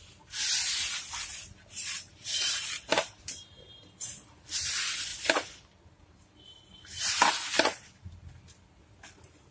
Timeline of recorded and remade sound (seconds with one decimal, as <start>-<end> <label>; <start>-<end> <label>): 0.0-1.3 recorded; 1.3-3.7 remade; 3.7-9.5 recorded